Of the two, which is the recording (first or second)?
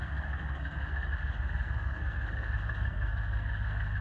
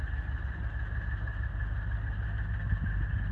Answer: second